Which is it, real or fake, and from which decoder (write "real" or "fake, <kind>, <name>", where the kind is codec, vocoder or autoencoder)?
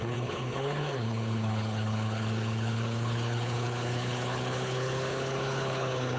fake, codec, HILCodec